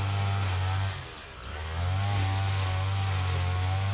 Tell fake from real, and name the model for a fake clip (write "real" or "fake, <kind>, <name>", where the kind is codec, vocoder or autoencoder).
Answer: real